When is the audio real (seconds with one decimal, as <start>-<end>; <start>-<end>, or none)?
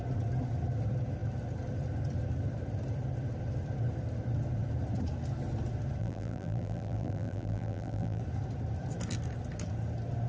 0.0-6.0; 8.2-10.3